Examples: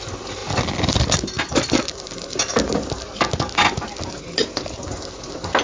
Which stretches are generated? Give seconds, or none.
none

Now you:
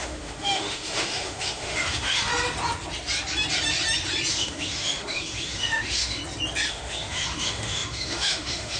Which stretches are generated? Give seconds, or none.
0.0-2.3 (autoencoder, DAC-VAE); 4.3-6.2; 6.7-8.8

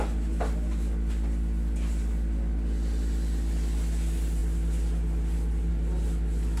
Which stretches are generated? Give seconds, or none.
none

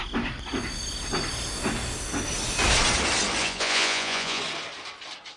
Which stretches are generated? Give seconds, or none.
3.4-4.4 (vocoder, Vocos)

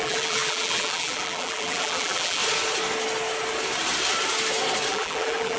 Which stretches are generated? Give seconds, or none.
0.0-2.4 (vocoder, BigVGAN v2); 4.9-5.6

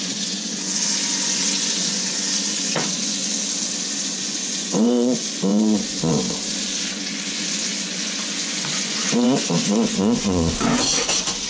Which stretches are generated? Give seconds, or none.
0.0-3.2 (vocoder, Vocos); 3.8-11.5